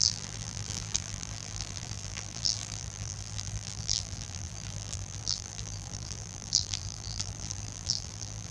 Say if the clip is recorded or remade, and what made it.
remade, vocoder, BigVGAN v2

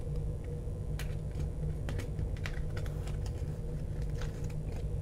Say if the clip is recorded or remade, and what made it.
recorded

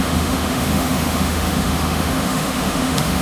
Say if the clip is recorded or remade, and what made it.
remade, autoencoder, DAC-VAE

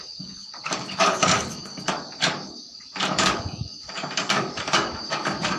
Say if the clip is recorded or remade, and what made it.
remade, codec, DAC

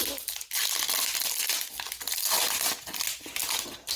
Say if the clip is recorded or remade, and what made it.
recorded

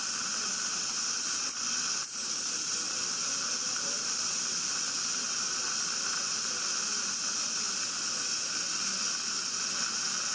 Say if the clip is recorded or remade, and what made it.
recorded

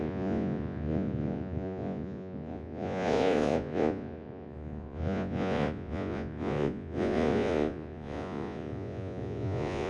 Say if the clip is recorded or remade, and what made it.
remade, vocoder, Vocos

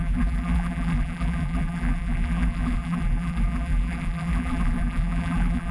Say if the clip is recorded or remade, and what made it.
remade, vocoder, BigVGAN v2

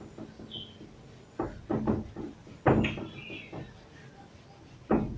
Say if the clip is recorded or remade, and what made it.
recorded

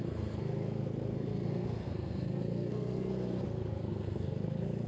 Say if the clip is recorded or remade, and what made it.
remade, codec, SNAC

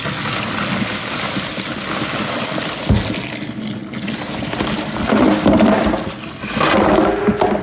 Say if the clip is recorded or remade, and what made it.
recorded